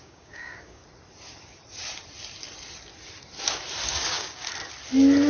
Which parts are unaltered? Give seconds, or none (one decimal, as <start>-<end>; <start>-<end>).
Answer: 0.8-4.0; 4.5-5.3